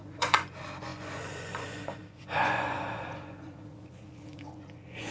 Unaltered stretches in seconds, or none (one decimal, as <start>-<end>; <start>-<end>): none